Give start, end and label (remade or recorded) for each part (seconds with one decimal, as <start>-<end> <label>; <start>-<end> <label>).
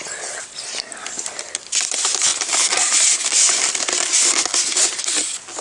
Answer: 0.0-2.3 recorded; 2.3-4.1 remade; 4.1-5.6 recorded